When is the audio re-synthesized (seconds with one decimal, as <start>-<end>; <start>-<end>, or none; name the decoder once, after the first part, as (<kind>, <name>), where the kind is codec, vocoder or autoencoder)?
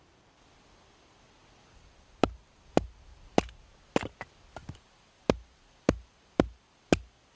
none